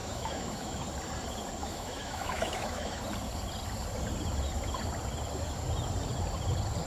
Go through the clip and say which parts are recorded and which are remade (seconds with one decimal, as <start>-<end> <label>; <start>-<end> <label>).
0.0-0.8 remade; 0.8-1.6 recorded; 1.6-3.0 remade; 3.0-6.9 recorded